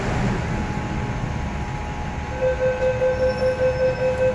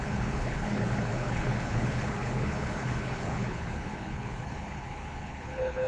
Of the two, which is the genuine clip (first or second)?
first